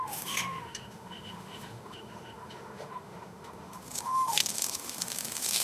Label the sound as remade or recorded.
remade